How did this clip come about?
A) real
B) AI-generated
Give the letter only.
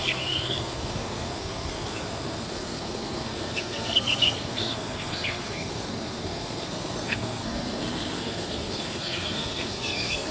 B